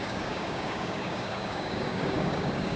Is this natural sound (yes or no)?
no